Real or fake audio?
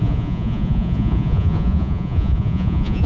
fake